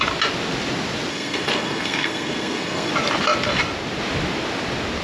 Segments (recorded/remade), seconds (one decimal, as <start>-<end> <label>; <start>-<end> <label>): 0.0-1.1 recorded; 1.1-2.9 remade; 2.9-5.0 recorded